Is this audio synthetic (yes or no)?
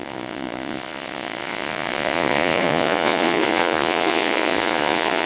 yes